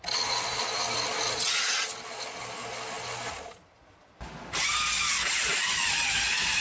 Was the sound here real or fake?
real